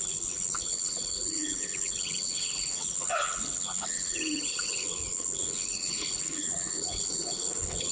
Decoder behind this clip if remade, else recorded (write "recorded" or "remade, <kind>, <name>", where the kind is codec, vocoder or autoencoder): remade, codec, HILCodec